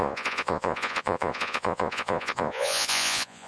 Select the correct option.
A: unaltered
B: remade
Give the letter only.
B